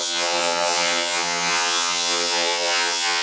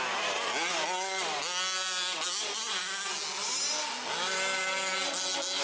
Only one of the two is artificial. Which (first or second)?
first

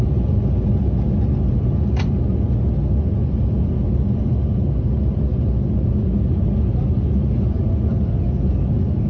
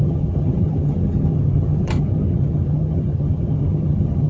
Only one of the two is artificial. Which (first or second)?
second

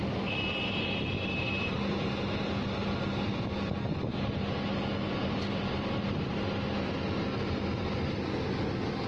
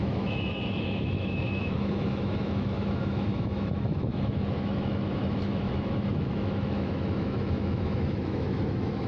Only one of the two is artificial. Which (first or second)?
second